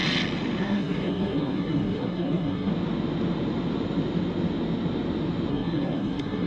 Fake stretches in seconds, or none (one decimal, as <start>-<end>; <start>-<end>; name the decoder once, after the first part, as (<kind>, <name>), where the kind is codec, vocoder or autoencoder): 0.6-2.7 (codec, SNAC); 5.5-6.5

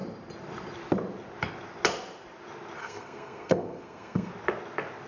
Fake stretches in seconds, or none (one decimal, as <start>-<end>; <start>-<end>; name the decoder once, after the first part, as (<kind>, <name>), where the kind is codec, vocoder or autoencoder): 2.8-4.3 (codec, SNAC)

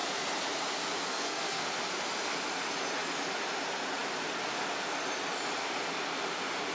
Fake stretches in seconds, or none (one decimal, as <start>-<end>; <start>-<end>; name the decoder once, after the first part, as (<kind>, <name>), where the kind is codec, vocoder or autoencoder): 1.1-1.6 (codec, SNAC)

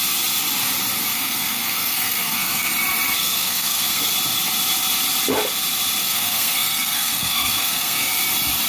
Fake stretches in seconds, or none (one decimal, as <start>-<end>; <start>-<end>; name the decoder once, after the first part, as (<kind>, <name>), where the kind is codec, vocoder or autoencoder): 1.1-2.7 (codec, SNAC); 3.2-4.0; 6.0-8.2

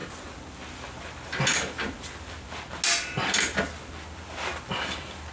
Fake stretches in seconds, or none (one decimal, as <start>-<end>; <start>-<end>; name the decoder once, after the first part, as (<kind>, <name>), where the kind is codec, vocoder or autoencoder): none